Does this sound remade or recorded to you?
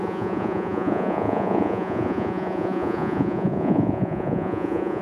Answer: remade